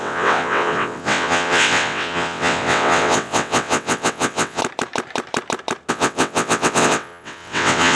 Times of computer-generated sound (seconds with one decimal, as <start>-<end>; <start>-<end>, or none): 0.0-4.6; 5.9-8.0